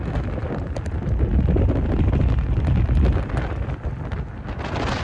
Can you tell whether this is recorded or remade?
recorded